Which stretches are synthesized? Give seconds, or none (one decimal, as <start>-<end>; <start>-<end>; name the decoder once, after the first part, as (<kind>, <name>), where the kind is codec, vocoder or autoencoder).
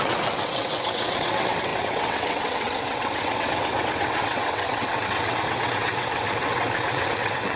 0.0-7.6 (vocoder, WaveNeXt)